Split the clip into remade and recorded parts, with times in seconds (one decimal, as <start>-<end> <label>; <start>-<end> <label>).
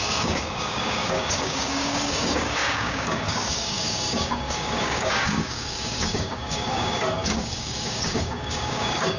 0.0-9.2 remade